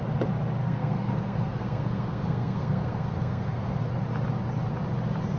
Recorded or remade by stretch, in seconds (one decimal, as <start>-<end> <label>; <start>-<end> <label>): 0.0-0.6 recorded; 0.6-3.8 remade; 3.8-5.4 recorded

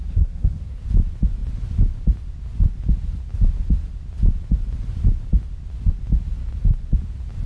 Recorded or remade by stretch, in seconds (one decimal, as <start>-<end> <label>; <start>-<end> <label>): 0.0-0.8 remade; 0.8-7.5 recorded

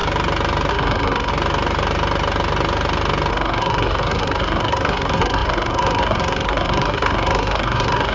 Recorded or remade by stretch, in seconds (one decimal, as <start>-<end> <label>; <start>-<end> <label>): 0.0-0.7 recorded; 0.7-1.3 remade; 1.3-3.3 recorded; 3.3-8.1 remade

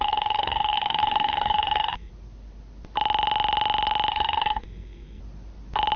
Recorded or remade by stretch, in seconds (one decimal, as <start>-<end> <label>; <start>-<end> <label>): 0.0-2.1 remade; 2.1-4.1 recorded; 4.1-5.2 remade; 5.2-6.0 recorded

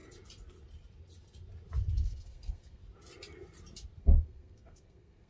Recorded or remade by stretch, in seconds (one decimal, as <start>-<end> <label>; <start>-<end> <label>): 0.0-1.9 recorded; 1.9-2.8 remade; 2.8-4.0 recorded; 4.0-5.3 remade

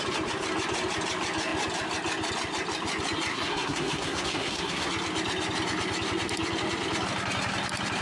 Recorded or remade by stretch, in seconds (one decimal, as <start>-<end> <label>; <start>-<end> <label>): 0.0-3.3 recorded; 3.3-4.9 remade; 4.9-8.0 recorded

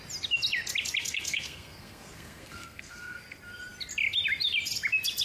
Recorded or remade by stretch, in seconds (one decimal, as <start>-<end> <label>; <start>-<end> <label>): 0.0-1.0 recorded; 1.0-3.2 remade; 3.2-5.2 recorded

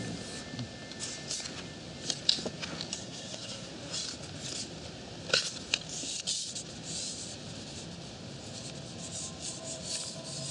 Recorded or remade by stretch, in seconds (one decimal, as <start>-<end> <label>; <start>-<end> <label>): 0.0-3.0 recorded; 3.0-3.7 remade; 3.7-10.5 recorded